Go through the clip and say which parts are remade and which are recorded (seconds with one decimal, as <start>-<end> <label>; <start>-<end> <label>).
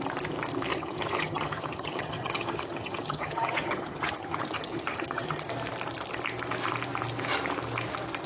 0.0-0.7 recorded; 0.7-5.5 remade; 5.5-8.3 recorded